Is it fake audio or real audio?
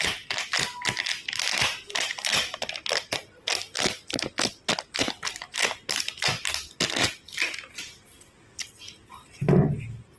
real